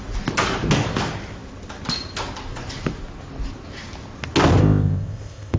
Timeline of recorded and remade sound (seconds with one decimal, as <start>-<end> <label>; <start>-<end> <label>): 0.0-4.6 recorded; 4.6-5.6 remade